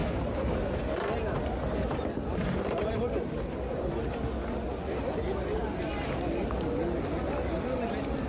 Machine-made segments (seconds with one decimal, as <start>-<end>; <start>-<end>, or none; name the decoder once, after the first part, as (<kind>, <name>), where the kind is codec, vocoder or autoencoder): none